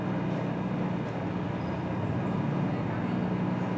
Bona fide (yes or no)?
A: yes